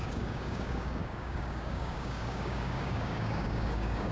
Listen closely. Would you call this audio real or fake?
fake